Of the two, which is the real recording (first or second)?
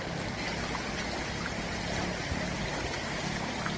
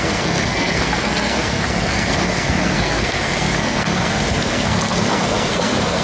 first